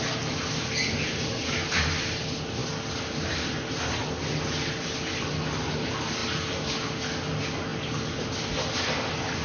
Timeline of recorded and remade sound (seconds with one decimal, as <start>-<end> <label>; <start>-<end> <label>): 0.0-9.4 recorded